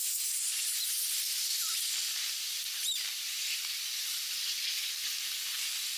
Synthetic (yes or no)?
yes